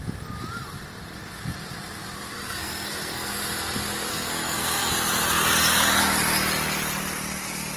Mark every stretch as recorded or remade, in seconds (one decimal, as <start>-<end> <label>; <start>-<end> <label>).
0.0-2.3 recorded; 2.3-3.3 remade; 3.3-4.1 recorded; 4.1-4.9 remade; 4.9-7.8 recorded